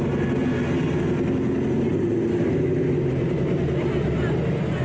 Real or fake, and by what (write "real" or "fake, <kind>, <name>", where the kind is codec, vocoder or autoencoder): real